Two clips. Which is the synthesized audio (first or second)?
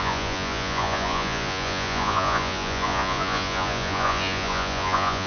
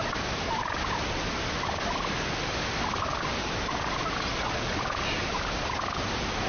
first